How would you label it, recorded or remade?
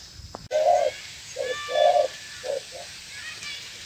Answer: recorded